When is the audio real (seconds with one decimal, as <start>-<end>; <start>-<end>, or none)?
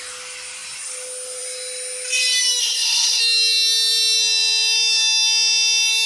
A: 0.0-2.6; 3.2-6.1